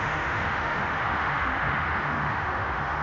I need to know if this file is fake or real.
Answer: fake